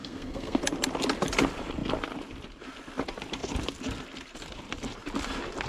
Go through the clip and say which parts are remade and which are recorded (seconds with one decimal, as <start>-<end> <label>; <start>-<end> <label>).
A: 0.0-0.6 remade; 0.6-5.7 recorded